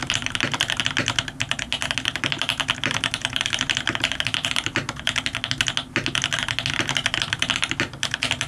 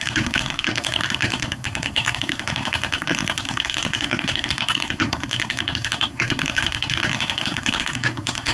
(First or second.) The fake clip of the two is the second